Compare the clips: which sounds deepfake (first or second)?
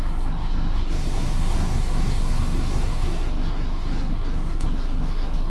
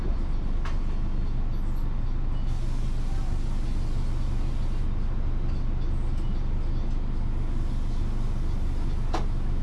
first